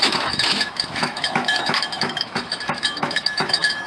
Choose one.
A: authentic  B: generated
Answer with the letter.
B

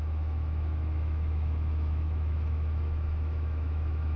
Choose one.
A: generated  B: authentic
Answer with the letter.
A